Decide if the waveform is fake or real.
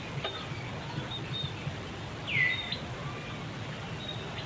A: real